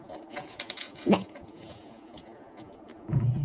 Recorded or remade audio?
remade